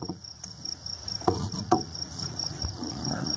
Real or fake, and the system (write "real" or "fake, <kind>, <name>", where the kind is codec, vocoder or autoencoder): fake, vocoder, Vocos